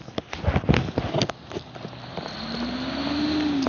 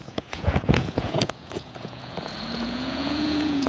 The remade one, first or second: second